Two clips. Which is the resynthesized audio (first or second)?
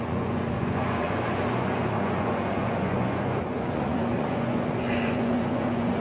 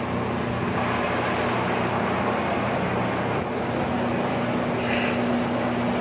first